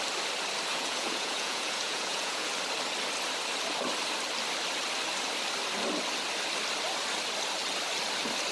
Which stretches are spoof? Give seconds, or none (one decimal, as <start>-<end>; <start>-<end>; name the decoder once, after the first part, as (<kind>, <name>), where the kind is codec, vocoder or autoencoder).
0.7-2.5 (vocoder, Vocos)